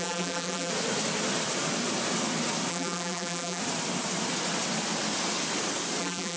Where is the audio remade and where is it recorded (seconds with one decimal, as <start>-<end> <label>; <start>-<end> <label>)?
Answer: 0.0-0.7 remade; 0.7-2.7 recorded; 2.7-3.6 remade; 3.6-6.0 recorded; 6.0-6.4 remade